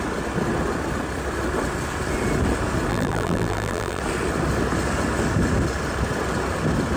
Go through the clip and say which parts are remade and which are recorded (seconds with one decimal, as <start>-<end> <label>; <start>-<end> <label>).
0.0-2.9 recorded; 2.9-4.0 remade; 4.0-7.0 recorded